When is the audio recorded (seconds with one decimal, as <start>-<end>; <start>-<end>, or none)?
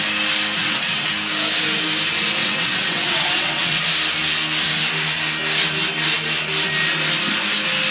0.0-0.6; 1.1-2.4; 3.8-7.9